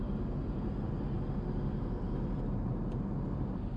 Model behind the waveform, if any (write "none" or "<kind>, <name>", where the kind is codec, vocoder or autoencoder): none